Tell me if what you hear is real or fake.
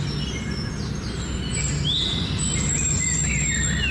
real